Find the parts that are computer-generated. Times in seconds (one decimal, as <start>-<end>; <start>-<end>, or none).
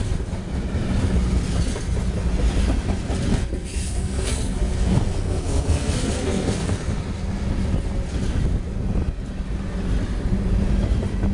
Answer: 3.3-7.0